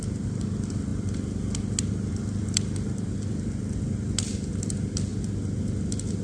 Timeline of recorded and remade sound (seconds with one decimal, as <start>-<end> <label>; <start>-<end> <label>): 0.0-6.2 recorded